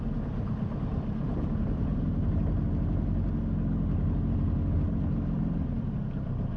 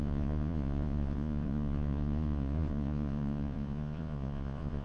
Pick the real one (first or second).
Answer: first